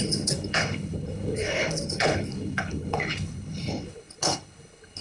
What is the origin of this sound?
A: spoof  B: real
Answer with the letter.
A